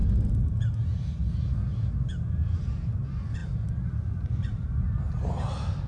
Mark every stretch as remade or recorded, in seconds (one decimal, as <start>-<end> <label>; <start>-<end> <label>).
0.0-5.9 recorded